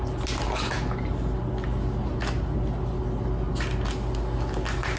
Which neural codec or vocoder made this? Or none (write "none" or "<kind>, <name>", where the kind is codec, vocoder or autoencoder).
none